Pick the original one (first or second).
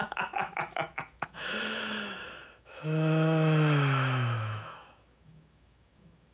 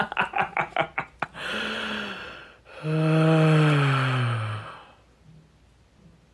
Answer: second